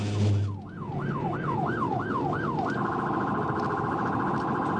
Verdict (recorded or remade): recorded